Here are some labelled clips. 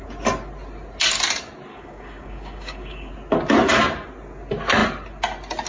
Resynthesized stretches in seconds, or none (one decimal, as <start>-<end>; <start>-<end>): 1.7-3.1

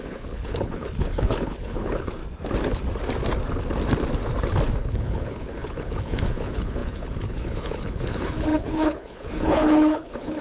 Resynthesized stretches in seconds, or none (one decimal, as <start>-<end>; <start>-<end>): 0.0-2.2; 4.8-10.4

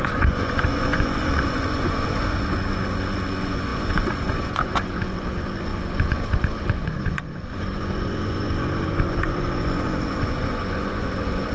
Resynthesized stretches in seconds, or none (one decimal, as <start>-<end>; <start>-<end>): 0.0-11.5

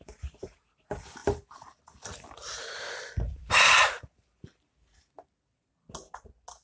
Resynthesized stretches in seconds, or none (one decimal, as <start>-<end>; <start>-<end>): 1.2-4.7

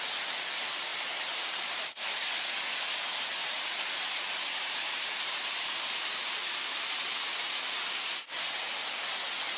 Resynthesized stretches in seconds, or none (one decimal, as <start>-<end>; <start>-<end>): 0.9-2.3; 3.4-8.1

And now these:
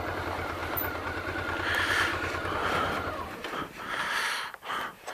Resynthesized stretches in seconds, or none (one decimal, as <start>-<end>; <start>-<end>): 0.0-0.6; 1.7-2.1; 2.7-5.1

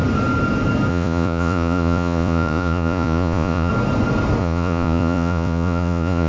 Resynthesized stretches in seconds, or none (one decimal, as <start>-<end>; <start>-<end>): 0.9-3.7; 4.4-6.3

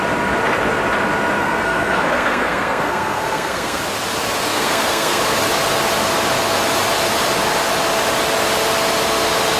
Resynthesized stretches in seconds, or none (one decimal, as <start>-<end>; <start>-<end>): 1.4-3.8; 4.5-5.2